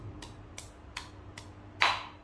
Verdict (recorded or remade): recorded